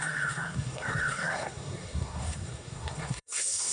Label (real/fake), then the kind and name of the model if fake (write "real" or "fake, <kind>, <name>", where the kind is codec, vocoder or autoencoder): fake, codec, SNAC